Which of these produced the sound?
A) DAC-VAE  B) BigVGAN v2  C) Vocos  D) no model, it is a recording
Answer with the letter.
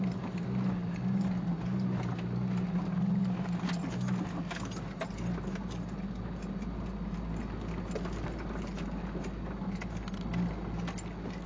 D